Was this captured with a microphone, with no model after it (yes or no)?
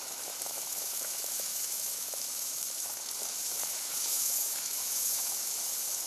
no